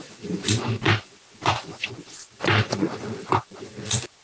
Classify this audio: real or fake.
fake